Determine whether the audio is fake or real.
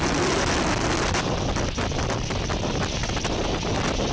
real